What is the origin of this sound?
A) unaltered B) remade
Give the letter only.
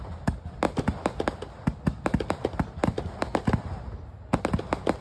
A